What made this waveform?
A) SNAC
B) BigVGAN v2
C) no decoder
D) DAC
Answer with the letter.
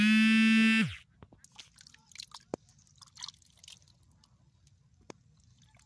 C